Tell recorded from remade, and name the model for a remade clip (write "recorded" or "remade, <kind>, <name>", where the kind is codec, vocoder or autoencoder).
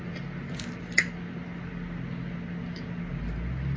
recorded